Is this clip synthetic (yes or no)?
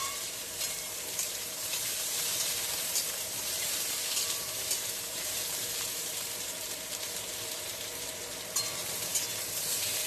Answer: yes